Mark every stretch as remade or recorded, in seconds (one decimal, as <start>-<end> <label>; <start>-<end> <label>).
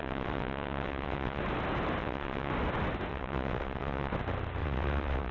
0.0-1.4 remade; 1.4-2.0 recorded; 2.0-2.5 remade; 2.5-3.1 recorded; 3.1-4.1 remade; 4.1-4.6 recorded; 4.6-5.3 remade